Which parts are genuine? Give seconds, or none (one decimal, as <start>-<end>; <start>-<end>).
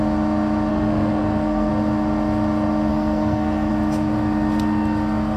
0.0-0.7; 1.7-2.9; 3.7-5.4